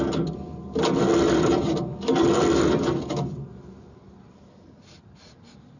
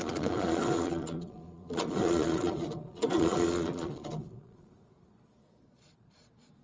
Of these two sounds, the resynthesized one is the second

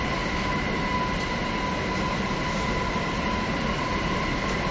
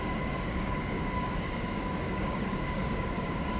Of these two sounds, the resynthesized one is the second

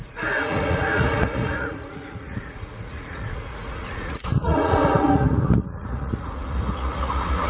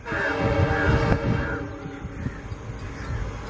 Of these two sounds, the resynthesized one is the first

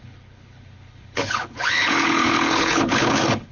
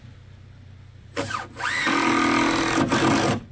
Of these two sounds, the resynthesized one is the first